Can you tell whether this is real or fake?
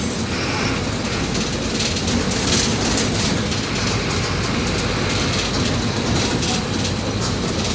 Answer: real